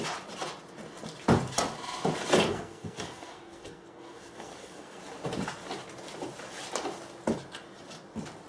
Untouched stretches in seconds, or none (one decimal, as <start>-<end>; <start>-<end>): 0.0-2.5; 5.0-8.5